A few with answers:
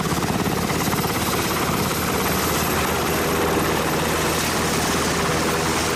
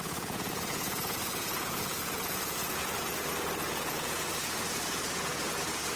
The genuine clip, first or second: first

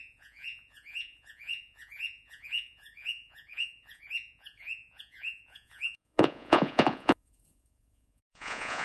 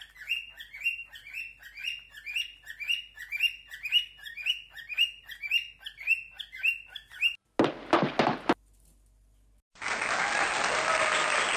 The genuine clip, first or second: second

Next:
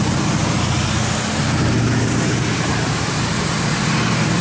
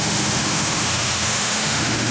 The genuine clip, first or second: first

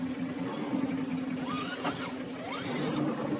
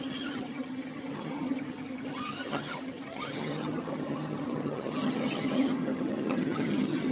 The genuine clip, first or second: first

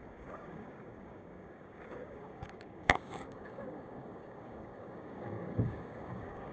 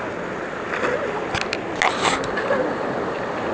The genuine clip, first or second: second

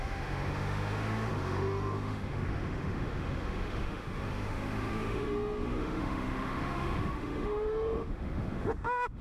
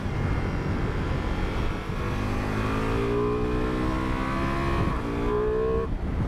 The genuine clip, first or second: second